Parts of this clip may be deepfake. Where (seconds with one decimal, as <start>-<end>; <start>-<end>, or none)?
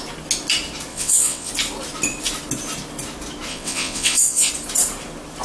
0.9-1.5; 3.5-4.5